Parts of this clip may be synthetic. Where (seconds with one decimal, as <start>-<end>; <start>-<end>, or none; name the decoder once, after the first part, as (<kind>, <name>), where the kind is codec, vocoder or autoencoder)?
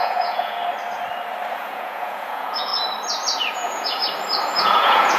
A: 0.0-0.6 (vocoder, Vocos); 1.5-2.7; 3.5-4.0; 4.6-5.2